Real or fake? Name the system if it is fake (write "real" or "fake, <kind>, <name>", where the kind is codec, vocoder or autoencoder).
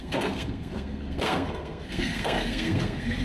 fake, codec, SNAC